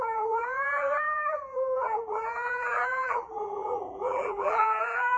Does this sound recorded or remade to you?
remade